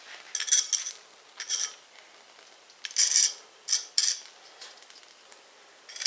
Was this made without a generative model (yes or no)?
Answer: yes